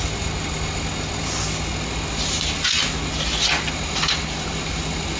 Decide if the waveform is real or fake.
real